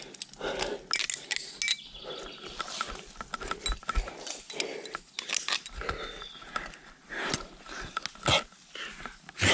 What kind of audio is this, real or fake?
real